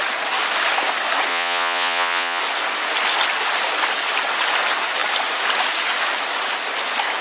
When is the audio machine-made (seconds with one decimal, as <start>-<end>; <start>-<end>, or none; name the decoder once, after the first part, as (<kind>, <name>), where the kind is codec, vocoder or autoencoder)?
1.3-2.4 (vocoder, Vocos)